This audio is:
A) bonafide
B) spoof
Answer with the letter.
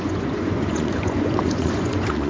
B